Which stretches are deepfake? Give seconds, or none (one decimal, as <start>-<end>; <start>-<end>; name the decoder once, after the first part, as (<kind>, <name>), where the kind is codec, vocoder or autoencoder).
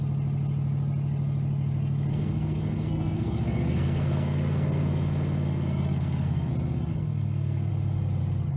2.1-6.5 (codec, SNAC); 6.9-7.7